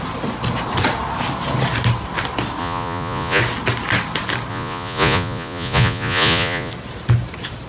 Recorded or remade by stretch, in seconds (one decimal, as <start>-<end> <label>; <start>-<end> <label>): 0.0-2.6 recorded; 2.6-3.4 remade; 3.4-4.5 recorded; 4.5-6.7 remade; 6.7-7.7 recorded